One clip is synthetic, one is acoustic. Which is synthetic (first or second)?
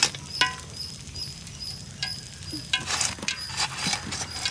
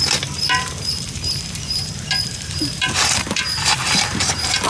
second